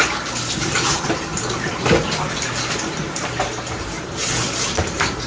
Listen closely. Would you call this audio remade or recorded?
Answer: recorded